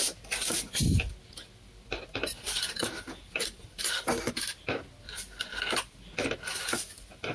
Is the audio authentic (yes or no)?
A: yes